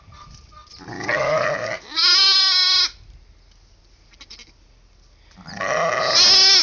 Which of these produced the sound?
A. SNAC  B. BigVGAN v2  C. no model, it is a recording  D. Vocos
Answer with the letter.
C